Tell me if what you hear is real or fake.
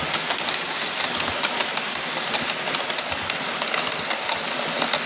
real